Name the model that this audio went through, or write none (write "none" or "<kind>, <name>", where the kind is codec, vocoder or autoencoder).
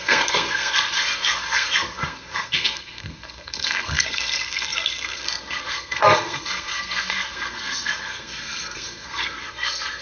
codec, SNAC